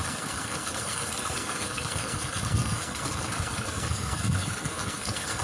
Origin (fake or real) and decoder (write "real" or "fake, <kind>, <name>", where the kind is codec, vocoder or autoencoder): fake, codec, SNAC